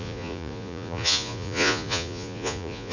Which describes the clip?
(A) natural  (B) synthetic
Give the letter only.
B